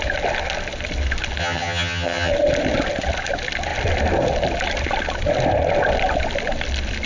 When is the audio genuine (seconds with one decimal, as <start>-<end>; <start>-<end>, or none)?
0.0-1.4; 2.3-7.1